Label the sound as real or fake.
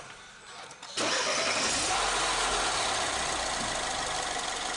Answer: real